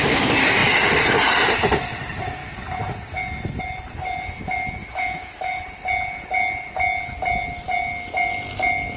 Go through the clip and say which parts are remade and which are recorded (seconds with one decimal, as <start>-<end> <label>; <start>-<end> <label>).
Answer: 0.0-4.8 recorded; 4.8-5.6 remade; 5.6-9.0 recorded